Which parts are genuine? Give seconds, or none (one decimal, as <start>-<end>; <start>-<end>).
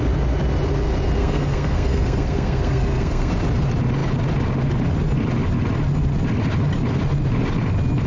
0.0-1.2; 3.3-8.1